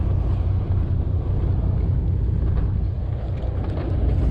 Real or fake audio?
real